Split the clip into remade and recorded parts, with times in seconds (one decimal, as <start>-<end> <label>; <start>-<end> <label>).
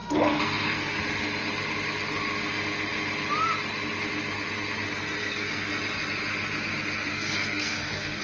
0.0-1.0 remade; 1.0-5.2 recorded; 5.2-5.7 remade; 5.7-7.1 recorded; 7.1-8.2 remade